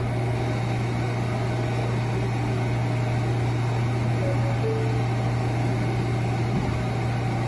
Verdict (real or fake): real